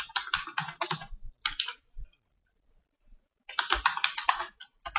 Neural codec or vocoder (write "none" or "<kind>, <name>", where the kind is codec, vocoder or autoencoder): none